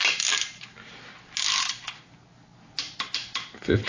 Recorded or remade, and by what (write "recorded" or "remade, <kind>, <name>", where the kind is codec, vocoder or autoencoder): recorded